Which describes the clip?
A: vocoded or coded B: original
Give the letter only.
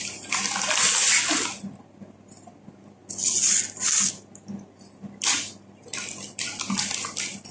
B